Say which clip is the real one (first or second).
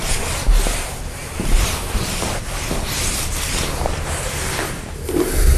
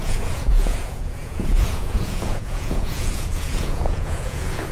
first